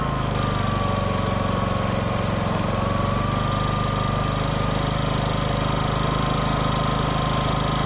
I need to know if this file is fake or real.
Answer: real